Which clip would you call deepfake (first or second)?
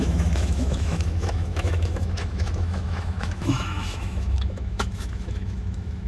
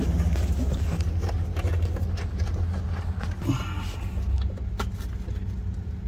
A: first